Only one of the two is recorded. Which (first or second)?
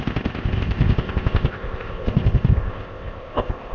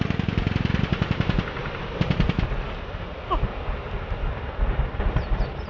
second